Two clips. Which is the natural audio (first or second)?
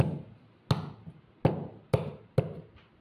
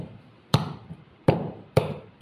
first